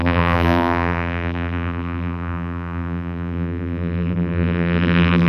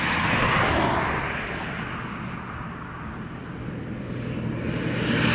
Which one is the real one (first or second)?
second